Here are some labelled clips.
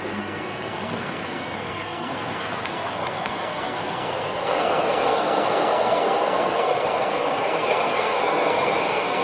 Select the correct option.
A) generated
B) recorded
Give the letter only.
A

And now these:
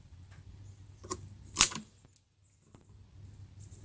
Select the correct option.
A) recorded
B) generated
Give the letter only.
A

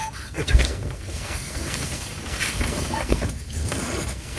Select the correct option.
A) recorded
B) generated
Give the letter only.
B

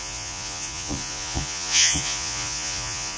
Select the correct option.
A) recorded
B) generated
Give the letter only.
B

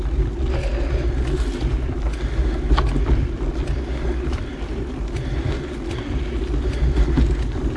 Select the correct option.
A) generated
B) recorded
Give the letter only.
B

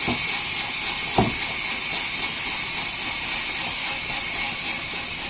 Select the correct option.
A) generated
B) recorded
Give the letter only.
B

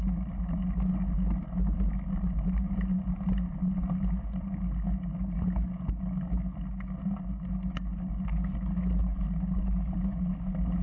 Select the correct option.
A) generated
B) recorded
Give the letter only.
B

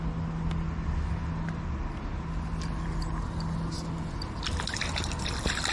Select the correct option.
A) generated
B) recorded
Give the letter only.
B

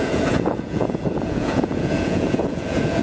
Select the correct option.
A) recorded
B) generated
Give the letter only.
B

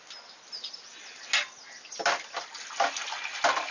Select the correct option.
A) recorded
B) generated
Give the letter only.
A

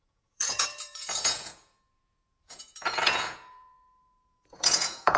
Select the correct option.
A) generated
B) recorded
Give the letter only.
A